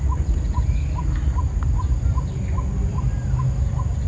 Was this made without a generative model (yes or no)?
yes